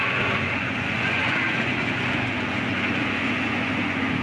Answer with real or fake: fake